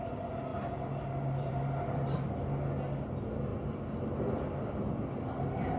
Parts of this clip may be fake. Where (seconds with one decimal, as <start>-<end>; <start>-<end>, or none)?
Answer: none